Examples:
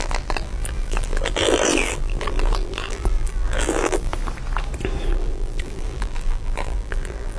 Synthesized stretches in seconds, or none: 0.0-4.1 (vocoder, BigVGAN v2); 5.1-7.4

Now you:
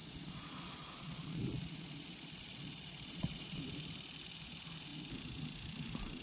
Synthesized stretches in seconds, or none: 0.0-3.6 (vocoder, Vocos)

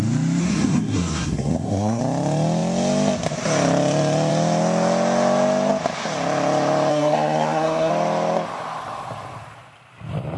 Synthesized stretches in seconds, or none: 0.4-2.0 (codec, SNAC); 6.9-7.9

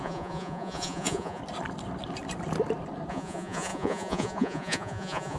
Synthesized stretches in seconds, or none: 0.0-1.4 (vocoder, Vocos); 3.1-5.4

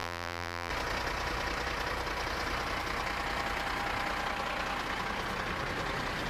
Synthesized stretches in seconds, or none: 0.0-0.7 (vocoder, BigVGAN v2)